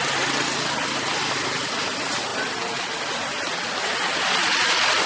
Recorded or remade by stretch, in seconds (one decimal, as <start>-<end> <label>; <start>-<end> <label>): 0.0-5.1 recorded